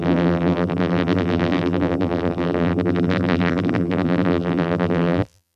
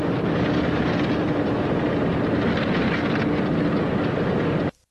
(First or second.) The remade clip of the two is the first